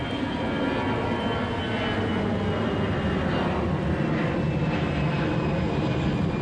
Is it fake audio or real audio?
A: real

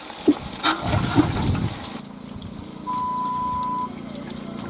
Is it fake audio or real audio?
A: real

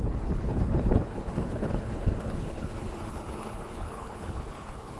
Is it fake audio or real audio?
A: fake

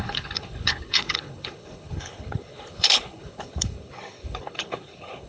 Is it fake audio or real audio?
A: fake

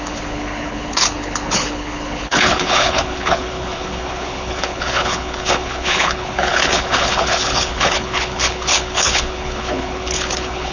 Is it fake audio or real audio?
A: fake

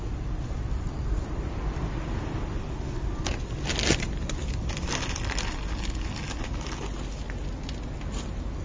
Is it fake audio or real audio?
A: real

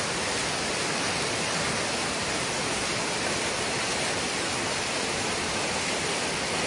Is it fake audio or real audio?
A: real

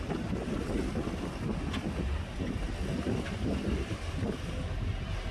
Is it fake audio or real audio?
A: real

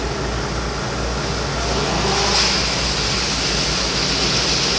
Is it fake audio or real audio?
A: real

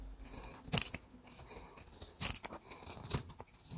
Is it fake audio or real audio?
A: real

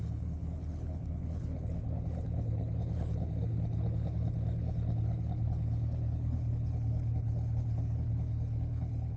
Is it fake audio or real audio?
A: fake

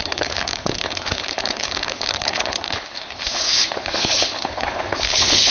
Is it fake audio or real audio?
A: fake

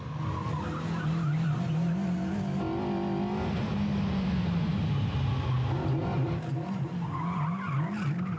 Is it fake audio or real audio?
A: real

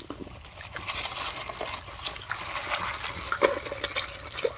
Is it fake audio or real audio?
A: real